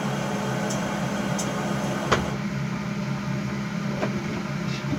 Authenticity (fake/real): real